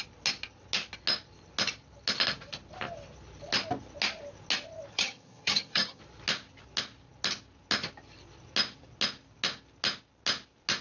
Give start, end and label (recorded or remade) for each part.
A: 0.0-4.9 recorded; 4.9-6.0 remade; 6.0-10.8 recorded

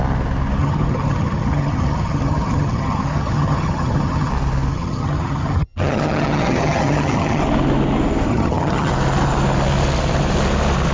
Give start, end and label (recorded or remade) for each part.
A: 0.0-0.6 recorded; 0.6-4.3 remade; 4.3-4.7 recorded; 4.7-7.4 remade; 7.4-8.3 recorded; 8.3-8.9 remade; 8.9-10.9 recorded

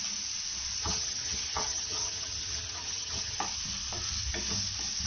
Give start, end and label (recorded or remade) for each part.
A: 0.0-0.8 recorded; 0.8-3.4 remade; 3.4-5.1 recorded